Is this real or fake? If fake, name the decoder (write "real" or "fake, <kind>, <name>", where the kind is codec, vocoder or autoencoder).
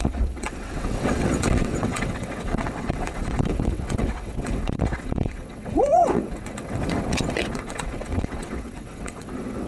fake, vocoder, WaveNeXt